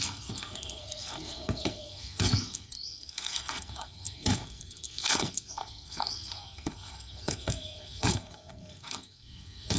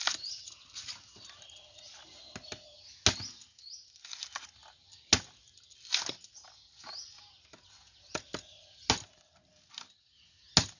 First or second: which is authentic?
second